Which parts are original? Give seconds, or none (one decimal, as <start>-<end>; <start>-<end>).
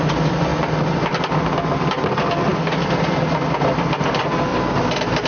0.0-0.5; 1.2-2.5; 3.5-4.5